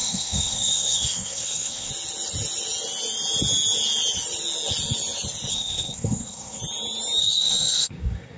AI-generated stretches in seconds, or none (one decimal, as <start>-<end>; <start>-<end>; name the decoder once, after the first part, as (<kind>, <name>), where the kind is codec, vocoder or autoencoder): 0.0-1.9 (codec, SNAC); 5.5-6.6; 7.2-8.4